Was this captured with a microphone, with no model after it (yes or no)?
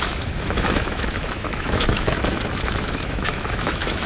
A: no